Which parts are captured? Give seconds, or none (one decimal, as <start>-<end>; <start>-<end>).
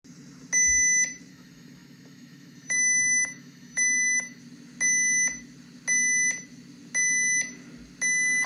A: 0.0-1.3; 4.4-8.5